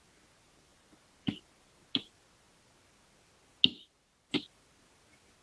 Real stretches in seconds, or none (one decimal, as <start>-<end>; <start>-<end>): 0.0-0.7; 1.4-3.7; 4.3-5.4